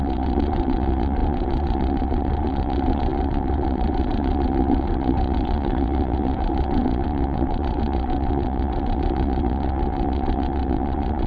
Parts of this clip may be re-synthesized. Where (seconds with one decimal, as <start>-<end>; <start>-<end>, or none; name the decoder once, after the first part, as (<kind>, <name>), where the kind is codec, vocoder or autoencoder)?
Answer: 0.0-11.3 (vocoder, WaveNeXt)